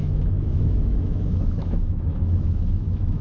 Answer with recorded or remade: remade